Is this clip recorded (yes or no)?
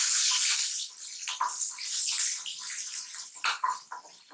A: yes